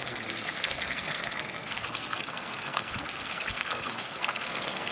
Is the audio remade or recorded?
remade